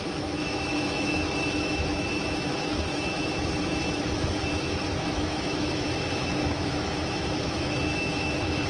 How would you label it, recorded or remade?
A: remade